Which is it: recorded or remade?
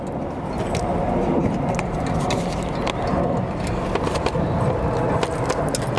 recorded